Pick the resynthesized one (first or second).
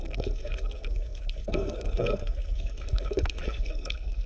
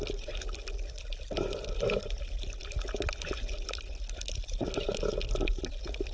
first